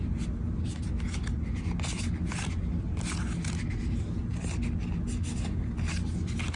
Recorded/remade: recorded